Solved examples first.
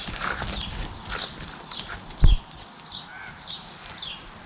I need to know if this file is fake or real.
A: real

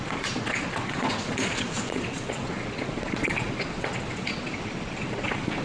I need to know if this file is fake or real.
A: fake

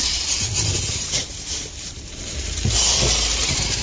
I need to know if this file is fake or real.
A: real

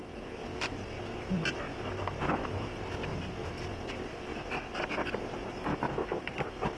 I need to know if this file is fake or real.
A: real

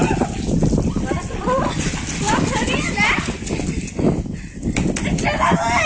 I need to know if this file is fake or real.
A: real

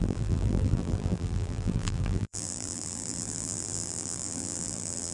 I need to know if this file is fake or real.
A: fake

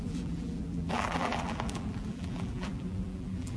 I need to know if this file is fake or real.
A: fake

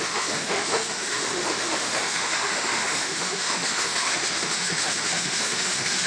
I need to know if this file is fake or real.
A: fake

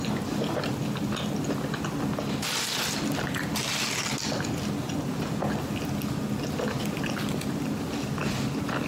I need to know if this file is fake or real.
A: real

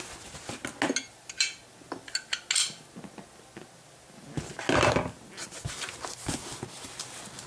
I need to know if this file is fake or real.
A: real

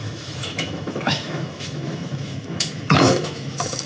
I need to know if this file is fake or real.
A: fake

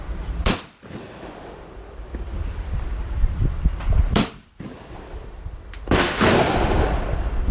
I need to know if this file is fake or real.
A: fake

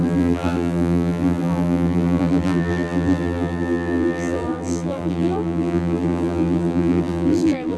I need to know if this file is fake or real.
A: fake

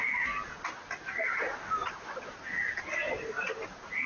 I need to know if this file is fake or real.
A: real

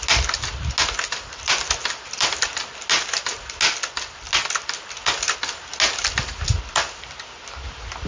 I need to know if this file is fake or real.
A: real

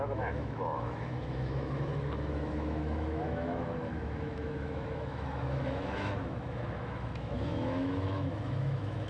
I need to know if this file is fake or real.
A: fake